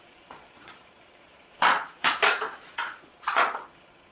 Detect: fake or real fake